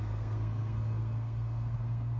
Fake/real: fake